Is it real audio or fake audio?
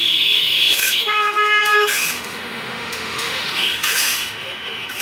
fake